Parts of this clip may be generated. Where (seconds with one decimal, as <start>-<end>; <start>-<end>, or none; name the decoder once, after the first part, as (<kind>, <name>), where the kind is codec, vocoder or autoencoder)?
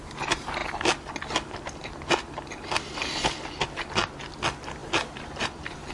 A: 4.8-5.9 (vocoder, BigVGAN v2)